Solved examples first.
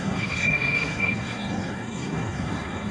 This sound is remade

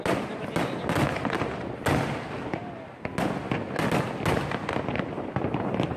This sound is recorded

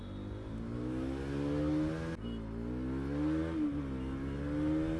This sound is recorded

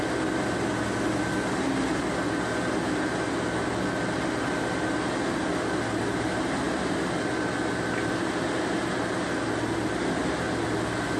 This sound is recorded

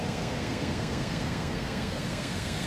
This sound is remade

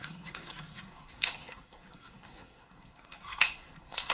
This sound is remade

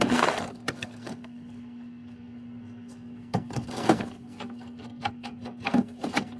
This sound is remade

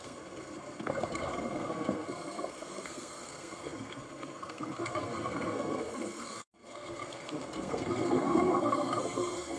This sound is remade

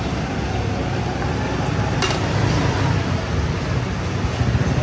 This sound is recorded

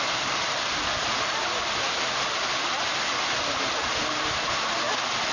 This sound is recorded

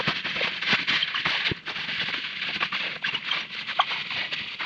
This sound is recorded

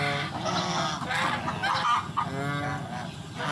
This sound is recorded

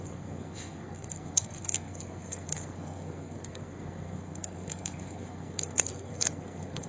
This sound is remade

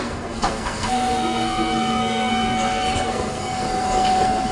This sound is remade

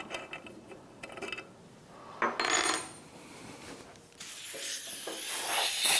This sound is recorded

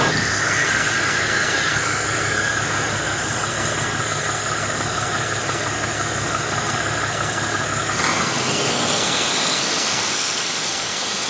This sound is remade